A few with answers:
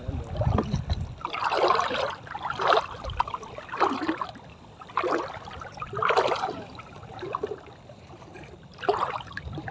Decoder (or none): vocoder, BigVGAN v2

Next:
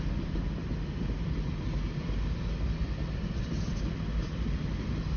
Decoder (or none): none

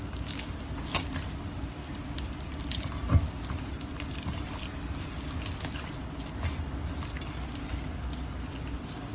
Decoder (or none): none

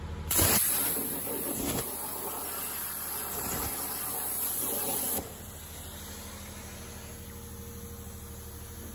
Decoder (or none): none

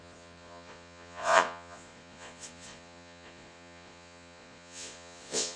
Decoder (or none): vocoder, Vocos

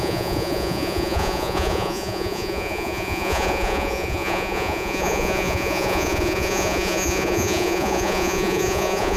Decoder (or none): vocoder, Vocos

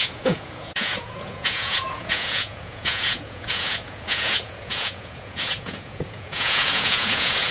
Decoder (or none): vocoder, Vocos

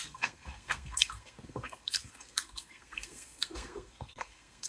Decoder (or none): codec, SNAC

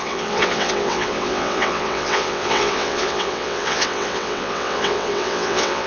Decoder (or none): vocoder, WaveNeXt